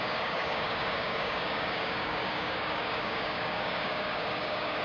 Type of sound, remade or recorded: remade